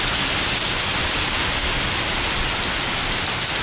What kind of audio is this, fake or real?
real